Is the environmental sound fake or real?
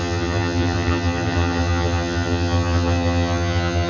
fake